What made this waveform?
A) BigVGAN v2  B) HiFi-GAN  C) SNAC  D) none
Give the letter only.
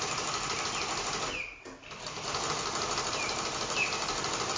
D